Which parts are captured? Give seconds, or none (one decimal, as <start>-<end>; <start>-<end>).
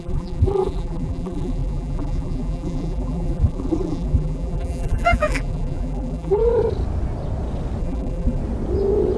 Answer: 6.5-7.8; 8.4-9.2